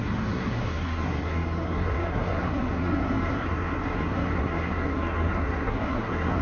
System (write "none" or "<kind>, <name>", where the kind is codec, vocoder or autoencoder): codec, SNAC